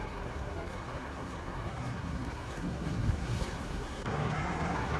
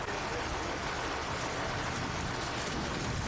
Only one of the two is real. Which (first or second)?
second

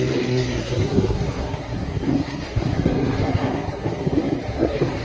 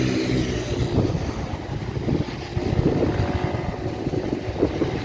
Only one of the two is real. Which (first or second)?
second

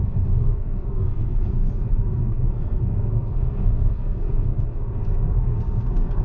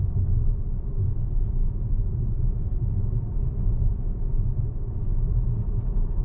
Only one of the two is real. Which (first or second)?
second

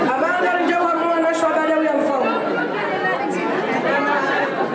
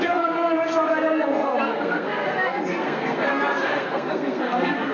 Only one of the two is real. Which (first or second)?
first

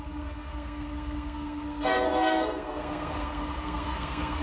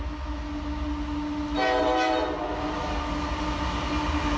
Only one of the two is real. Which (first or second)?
second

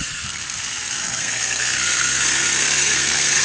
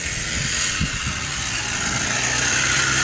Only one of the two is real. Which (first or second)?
second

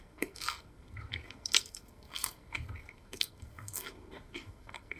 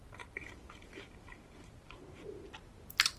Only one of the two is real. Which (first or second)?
second